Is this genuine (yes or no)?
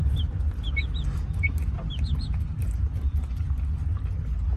yes